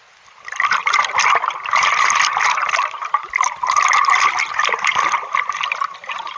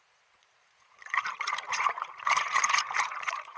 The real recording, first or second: first